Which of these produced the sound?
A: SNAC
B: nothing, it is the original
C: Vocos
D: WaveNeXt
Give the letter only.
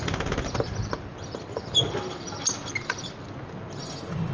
B